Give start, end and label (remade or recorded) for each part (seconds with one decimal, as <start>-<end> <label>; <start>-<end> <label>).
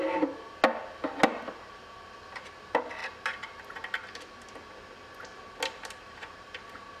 0.0-7.0 recorded